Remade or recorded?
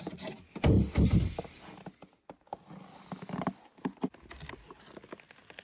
recorded